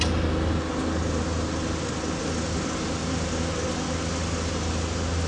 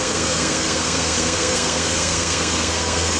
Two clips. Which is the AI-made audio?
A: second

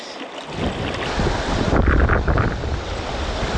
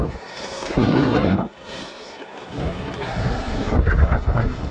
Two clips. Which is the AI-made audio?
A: second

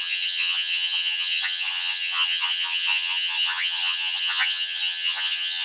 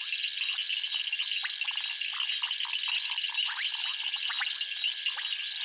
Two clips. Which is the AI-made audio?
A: first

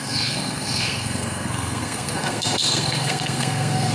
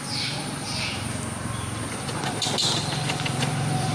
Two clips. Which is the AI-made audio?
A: first